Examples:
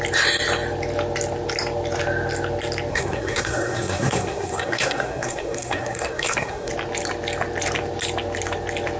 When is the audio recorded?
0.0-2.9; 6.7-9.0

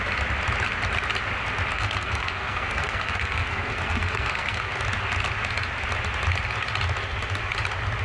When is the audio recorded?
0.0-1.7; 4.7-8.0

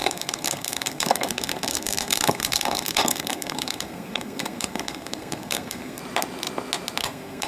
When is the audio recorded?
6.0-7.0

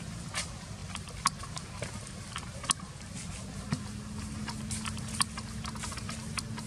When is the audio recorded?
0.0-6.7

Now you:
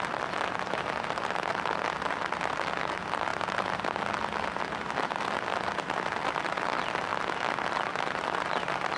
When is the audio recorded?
0.0-9.0

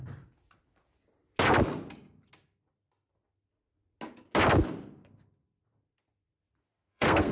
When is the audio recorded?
0.0-6.7

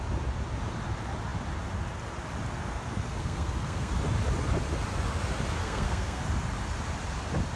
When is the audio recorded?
0.0-3.2; 3.9-5.6; 6.2-7.6

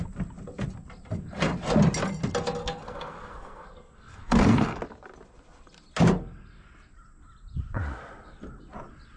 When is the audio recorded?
0.0-2.6; 4.8-9.2